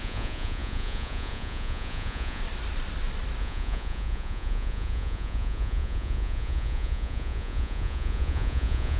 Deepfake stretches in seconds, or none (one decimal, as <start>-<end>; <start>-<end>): 0.0-2.4; 3.4-9.0